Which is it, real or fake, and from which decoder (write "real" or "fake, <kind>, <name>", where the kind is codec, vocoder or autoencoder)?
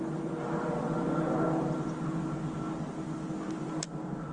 real